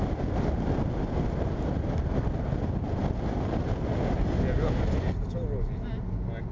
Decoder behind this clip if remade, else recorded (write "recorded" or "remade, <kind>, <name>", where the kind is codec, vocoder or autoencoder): recorded